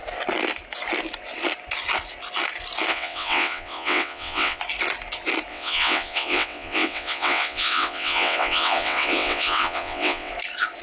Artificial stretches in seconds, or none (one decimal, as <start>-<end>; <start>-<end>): 2.9-4.6; 5.5-10.3